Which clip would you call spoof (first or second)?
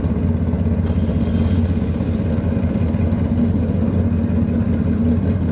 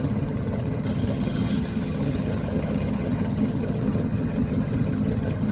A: second